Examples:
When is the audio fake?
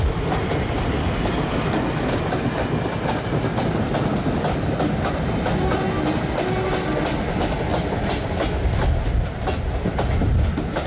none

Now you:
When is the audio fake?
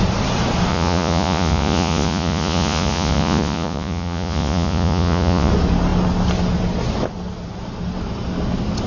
0.7-5.5 (vocoder, Vocos)